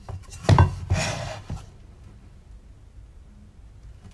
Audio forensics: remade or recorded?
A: recorded